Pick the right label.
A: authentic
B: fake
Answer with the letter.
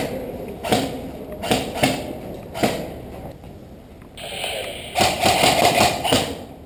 A